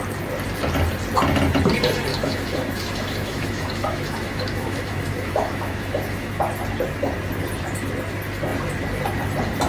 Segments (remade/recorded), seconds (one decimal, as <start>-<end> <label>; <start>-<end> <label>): 0.0-2.1 recorded; 2.1-6.4 remade; 6.4-9.7 recorded